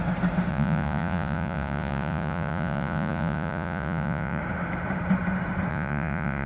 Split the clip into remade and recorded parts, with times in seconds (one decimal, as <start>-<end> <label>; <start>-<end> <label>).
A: 0.0-0.5 recorded; 0.5-4.4 remade; 4.4-5.7 recorded; 5.7-6.5 remade